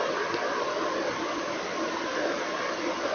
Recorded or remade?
recorded